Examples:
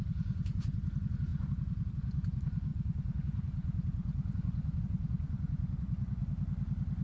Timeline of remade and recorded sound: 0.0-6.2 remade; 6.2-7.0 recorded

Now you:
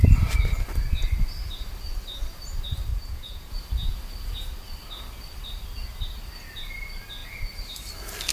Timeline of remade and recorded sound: 0.0-2.9 recorded; 2.9-3.5 remade; 3.5-8.3 recorded